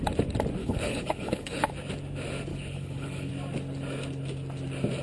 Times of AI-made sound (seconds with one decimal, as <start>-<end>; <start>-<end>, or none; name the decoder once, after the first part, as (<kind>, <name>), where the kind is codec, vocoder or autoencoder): 0.6-1.7 (codec, HILCodec); 2.5-3.3